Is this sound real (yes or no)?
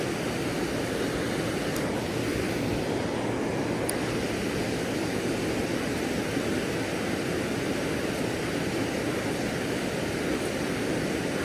yes